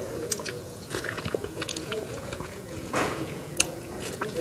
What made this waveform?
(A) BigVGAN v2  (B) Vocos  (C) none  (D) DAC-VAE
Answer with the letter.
B